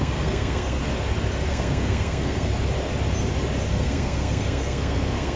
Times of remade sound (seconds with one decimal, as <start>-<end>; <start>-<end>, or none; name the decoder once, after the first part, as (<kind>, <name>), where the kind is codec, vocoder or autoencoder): 0.0-0.8 (codec, SNAC); 1.5-2.5; 3.7-5.4